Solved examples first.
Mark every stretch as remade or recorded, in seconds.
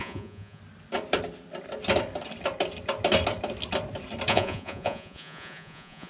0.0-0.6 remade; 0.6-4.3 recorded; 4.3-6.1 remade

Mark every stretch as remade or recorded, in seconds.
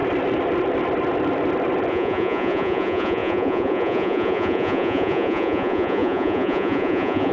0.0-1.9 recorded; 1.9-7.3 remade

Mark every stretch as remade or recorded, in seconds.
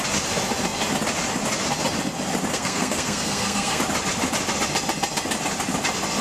0.0-2.5 recorded; 2.5-3.8 remade; 3.8-6.2 recorded